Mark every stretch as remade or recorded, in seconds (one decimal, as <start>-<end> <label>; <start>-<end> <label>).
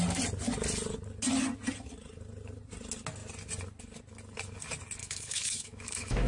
0.0-5.0 recorded; 5.0-6.3 remade